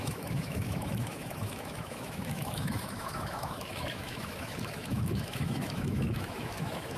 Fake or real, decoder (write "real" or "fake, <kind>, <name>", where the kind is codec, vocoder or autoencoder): fake, autoencoder, DAC-VAE